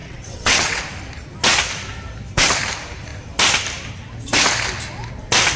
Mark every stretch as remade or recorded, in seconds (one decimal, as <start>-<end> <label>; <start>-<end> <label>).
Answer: 0.0-0.8 remade; 0.8-5.6 recorded